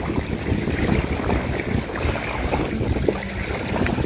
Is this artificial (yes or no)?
no